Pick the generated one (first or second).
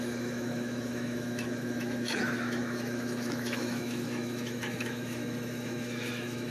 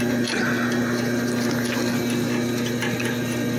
first